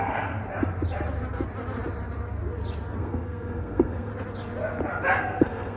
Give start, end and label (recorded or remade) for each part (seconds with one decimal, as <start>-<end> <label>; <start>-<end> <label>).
0.0-0.4 remade; 0.4-3.0 recorded; 3.0-4.1 remade; 4.1-5.2 recorded; 5.2-5.8 remade